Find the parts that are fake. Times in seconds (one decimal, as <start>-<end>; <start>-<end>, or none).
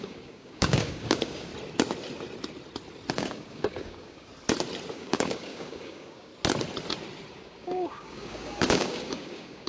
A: 0.0-1.5; 3.1-4.3; 4.9-6.3; 7.3-9.7